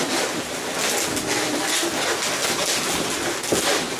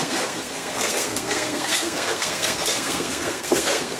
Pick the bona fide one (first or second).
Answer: first